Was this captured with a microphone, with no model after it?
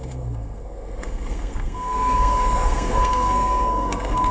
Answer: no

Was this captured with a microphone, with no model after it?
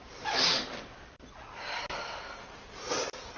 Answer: yes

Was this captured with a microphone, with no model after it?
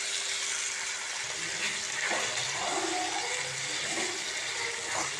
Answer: yes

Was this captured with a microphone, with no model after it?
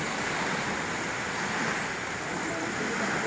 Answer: yes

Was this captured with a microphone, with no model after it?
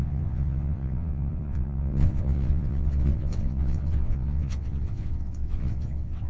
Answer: no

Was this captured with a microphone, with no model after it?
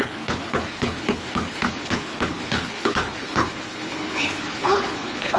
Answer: no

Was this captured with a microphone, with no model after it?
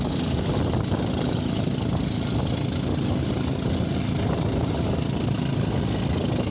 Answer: yes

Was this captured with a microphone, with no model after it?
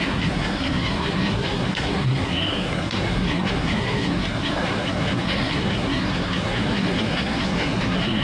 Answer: no